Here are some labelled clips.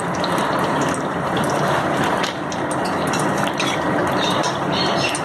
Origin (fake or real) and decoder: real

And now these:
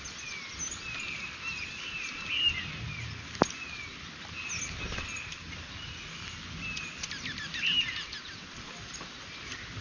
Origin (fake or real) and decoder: real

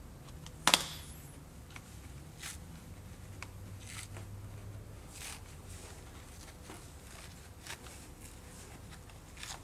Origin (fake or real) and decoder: real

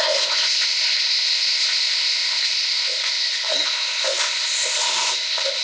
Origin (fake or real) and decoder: fake, codec, ZipCodec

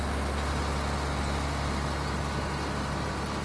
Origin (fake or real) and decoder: real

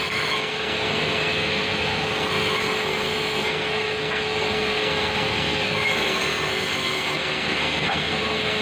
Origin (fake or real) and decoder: fake, codec, SNAC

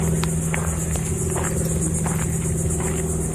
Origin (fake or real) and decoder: real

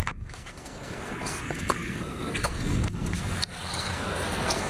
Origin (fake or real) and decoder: fake, codec, SNAC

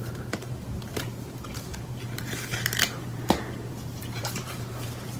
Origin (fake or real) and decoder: fake, vocoder, BigVGAN v2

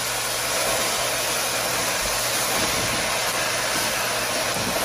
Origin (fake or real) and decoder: real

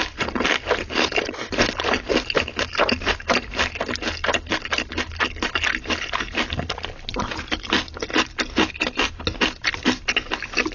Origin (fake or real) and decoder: real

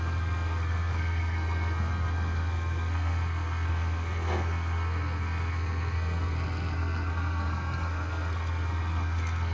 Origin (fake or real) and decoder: fake, codec, SNAC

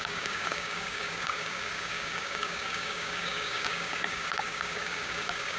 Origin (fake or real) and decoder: fake, codec, DAC